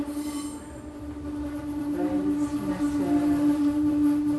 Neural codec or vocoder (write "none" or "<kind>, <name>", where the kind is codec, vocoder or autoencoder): vocoder, BigVGAN v2